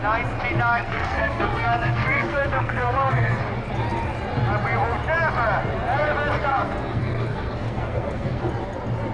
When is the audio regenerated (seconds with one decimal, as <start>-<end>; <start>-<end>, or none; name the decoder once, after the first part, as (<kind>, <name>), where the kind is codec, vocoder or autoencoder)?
0.7-3.4 (codec, SNAC); 6.5-8.5